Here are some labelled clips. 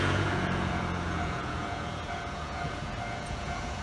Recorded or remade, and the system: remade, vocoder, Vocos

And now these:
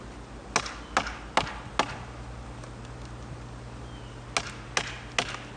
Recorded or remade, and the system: recorded